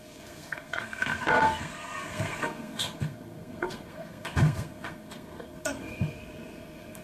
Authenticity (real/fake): fake